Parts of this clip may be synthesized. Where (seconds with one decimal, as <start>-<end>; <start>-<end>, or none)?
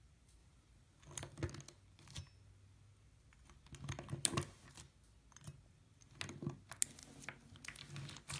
none